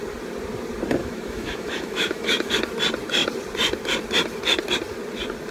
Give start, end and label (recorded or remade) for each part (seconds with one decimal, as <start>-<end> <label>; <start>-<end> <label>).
0.0-1.0 recorded; 1.0-2.5 remade; 2.5-5.5 recorded